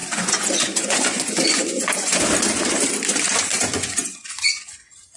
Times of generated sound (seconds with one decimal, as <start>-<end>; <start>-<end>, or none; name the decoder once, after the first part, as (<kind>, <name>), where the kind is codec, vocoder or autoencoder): 0.0-2.2 (vocoder, Vocos); 3.5-5.2